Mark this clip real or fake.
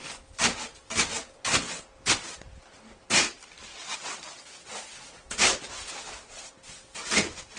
real